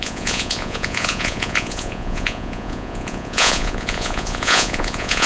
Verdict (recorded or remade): remade